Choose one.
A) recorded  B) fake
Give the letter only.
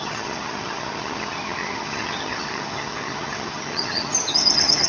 B